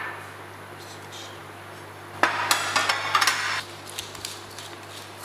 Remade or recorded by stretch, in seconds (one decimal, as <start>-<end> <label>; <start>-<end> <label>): 0.0-5.2 recorded